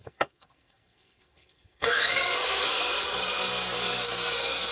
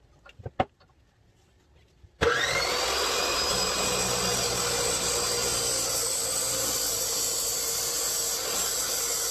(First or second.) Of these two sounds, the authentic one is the second